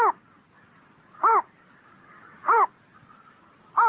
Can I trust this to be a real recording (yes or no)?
yes